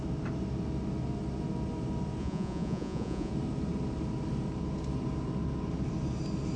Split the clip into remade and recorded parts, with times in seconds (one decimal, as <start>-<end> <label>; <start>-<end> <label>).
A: 0.0-2.2 recorded; 2.2-3.3 remade; 3.3-6.6 recorded